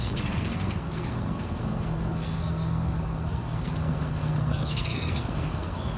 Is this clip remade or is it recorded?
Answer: remade